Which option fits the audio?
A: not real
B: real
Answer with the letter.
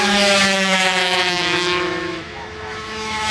A